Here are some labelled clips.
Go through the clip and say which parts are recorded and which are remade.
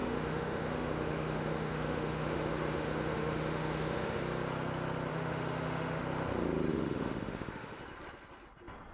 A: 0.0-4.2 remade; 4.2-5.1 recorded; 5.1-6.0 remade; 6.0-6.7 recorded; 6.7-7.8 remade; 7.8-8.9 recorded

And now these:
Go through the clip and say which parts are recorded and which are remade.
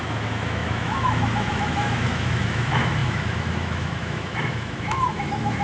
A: 0.0-5.6 remade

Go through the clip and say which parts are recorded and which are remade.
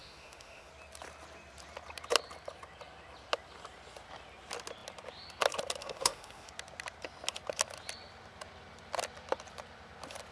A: 0.0-0.7 remade; 0.7-5.8 recorded; 5.8-6.5 remade; 6.5-10.3 recorded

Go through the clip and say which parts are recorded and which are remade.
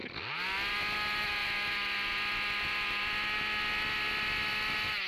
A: 0.0-5.1 recorded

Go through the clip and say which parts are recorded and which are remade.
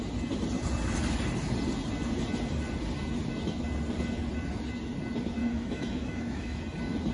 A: 0.0-5.4 recorded; 5.4-6.6 remade; 6.6-7.1 recorded